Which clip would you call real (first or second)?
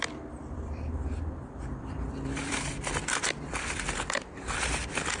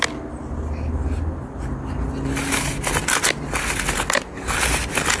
second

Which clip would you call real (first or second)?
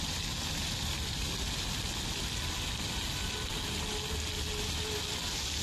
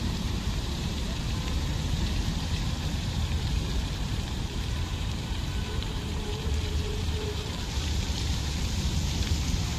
first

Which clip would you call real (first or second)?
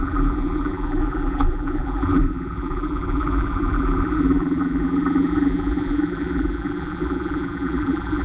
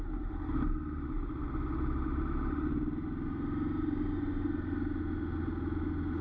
second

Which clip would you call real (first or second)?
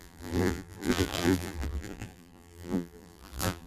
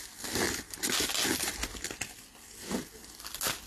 second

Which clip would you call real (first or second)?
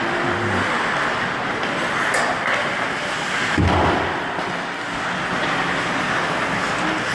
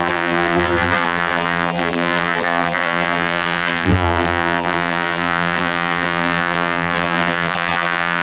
first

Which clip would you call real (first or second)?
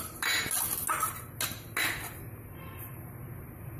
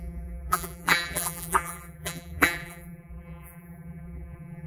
first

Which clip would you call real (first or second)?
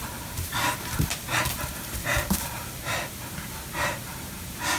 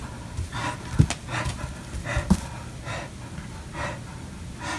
second